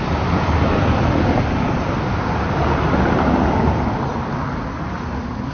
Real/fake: real